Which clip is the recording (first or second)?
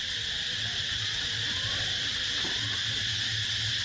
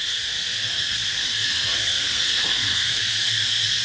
first